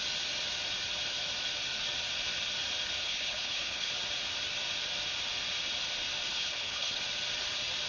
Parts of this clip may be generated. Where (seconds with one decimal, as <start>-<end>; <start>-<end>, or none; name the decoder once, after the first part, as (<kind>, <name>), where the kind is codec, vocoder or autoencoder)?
3.0-3.9 (codec, HILCodec); 6.3-7.0